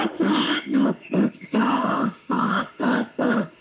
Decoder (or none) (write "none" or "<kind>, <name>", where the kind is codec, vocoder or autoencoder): autoencoder, DAC-VAE